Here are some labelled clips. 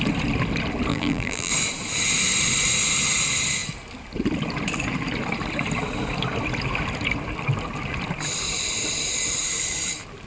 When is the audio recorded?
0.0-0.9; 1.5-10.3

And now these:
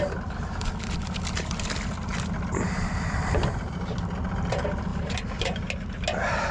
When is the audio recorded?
0.0-6.5

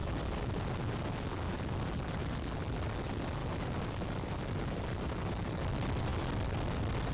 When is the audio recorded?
0.0-7.1

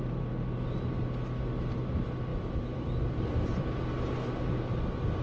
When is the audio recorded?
0.0-2.3; 4.1-5.2

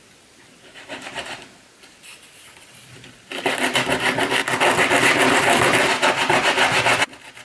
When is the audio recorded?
4.4-5.0